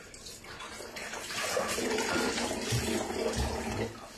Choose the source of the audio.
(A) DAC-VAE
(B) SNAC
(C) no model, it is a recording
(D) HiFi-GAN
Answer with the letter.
C